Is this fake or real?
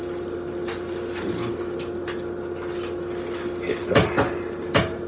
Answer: real